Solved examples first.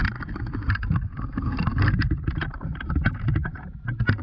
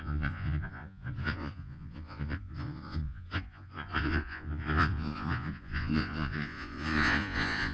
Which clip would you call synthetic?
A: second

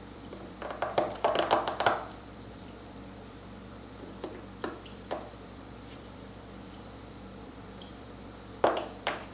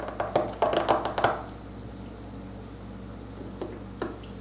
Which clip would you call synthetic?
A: first